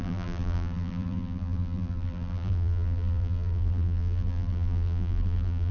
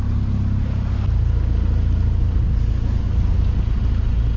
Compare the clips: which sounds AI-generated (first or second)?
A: first